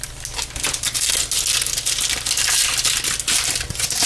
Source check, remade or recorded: recorded